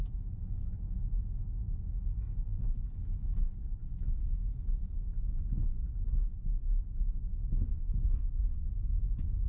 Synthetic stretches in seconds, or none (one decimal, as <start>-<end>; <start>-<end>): 1.6-2.6